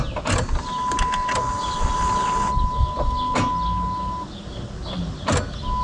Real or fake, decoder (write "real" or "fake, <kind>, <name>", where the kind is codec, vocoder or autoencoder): real